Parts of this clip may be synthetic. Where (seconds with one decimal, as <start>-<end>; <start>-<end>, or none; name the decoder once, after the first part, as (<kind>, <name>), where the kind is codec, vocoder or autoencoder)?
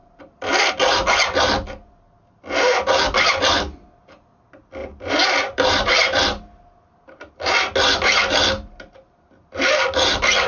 4.8-6.2 (vocoder, BigVGAN v2)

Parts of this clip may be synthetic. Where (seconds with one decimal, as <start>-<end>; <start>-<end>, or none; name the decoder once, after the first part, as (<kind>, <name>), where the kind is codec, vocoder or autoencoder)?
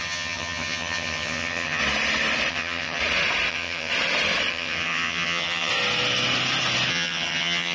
0.0-1.8 (vocoder, HiFi-GAN); 2.5-3.0; 3.5-3.9; 4.5-5.7; 6.9-7.7